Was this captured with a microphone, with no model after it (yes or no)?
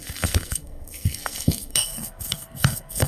no